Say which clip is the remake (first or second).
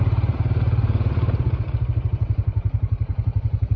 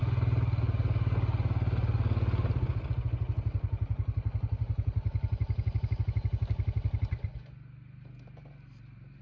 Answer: first